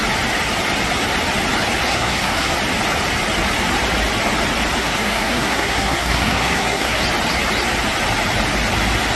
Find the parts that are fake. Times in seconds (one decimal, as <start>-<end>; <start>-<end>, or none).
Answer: 1.9-2.5; 4.8-7.0